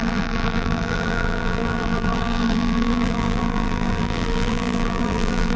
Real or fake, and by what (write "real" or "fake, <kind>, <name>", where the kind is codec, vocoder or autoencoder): fake, vocoder, BigVGAN v2